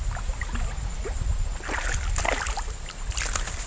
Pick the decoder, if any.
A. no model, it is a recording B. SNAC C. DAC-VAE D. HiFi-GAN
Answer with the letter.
A